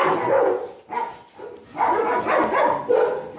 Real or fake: real